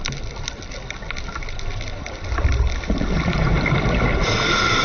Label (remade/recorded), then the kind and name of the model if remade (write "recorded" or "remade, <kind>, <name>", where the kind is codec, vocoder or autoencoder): recorded